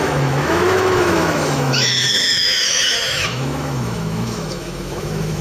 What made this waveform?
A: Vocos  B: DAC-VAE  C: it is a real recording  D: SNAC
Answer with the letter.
B